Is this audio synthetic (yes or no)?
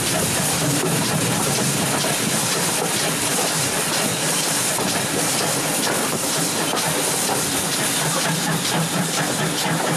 yes